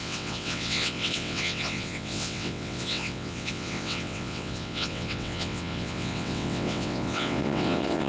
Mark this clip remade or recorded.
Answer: remade